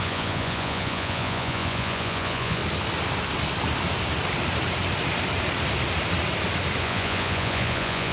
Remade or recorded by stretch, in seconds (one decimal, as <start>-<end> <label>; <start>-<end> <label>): 0.0-2.6 remade; 2.6-6.8 recorded; 6.8-8.1 remade